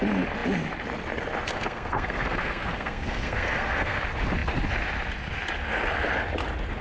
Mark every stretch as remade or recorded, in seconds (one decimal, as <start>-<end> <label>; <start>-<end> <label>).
0.0-1.5 recorded; 1.5-4.0 remade; 4.0-6.8 recorded